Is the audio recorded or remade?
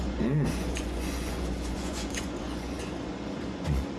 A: remade